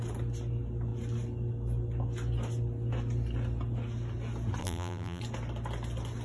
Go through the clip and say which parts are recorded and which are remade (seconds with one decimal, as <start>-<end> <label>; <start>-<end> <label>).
0.0-4.6 recorded; 4.6-5.2 remade; 5.2-6.2 recorded